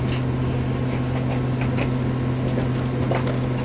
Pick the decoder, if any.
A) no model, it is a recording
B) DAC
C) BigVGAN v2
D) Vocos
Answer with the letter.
A